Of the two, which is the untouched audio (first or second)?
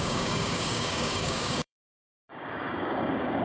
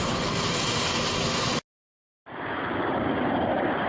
second